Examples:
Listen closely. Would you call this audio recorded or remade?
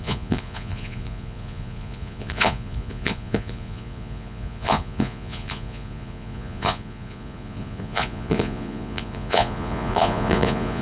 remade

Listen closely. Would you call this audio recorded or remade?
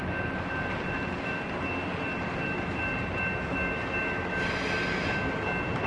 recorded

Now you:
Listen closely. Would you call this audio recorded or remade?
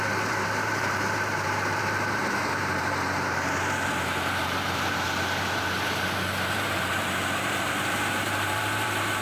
remade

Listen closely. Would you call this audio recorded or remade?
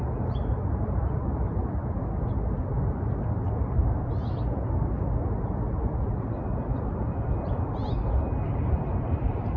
recorded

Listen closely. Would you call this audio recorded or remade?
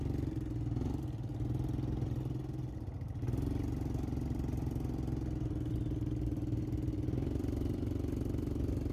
recorded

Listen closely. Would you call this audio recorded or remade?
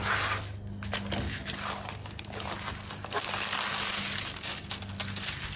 recorded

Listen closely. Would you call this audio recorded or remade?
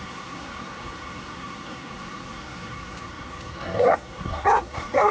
remade